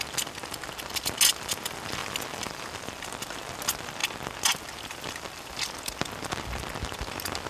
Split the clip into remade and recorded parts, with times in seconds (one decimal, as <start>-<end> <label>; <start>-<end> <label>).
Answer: 0.0-2.0 recorded; 2.0-2.6 remade; 2.6-7.5 recorded